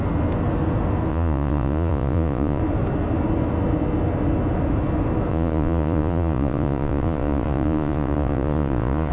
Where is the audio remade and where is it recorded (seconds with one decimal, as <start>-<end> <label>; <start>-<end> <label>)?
0.0-1.1 recorded; 1.1-2.6 remade; 2.6-5.3 recorded; 5.3-9.1 remade